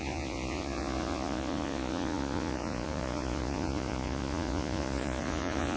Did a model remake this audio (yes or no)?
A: yes